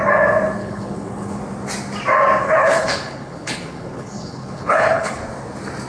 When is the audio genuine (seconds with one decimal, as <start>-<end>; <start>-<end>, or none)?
0.0-0.6; 1.4-2.4; 5.2-5.9